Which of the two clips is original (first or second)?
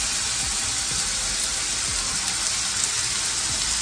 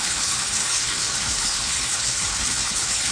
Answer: first